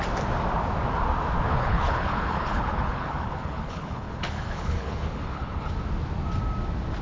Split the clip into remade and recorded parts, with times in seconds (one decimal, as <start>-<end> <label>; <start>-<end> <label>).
0.0-1.5 recorded; 1.5-5.7 remade; 5.7-7.0 recorded